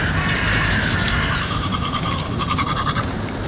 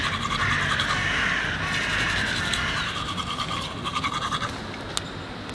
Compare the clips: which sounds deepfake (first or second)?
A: first